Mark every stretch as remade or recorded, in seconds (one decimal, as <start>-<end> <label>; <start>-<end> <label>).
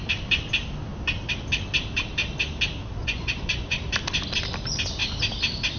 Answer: 0.0-3.0 recorded; 3.0-3.8 remade; 3.8-5.8 recorded